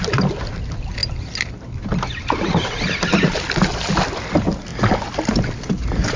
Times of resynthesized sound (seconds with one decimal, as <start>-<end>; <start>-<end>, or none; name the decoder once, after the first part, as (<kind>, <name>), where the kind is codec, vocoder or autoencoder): none